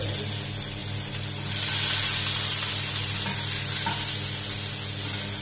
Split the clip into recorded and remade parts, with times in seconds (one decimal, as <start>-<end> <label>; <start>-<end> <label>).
0.0-5.4 recorded